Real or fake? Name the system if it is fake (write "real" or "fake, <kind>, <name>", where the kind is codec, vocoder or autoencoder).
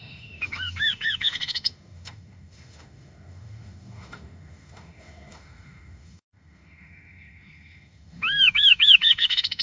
fake, autoencoder, DAC-VAE